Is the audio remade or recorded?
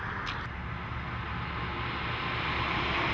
recorded